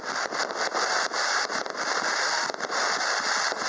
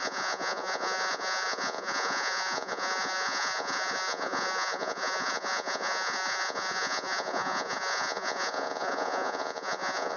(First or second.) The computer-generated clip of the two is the second